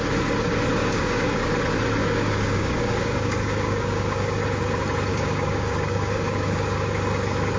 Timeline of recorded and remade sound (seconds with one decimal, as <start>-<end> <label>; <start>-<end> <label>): 0.0-0.8 recorded; 0.8-1.5 remade; 1.5-2.0 recorded; 2.0-4.4 remade; 4.4-5.1 recorded; 5.1-6.9 remade; 6.9-7.6 recorded